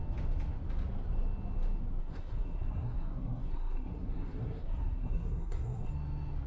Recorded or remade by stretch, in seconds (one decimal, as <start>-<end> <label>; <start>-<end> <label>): 0.0-2.0 recorded; 2.0-5.9 remade; 5.9-6.5 recorded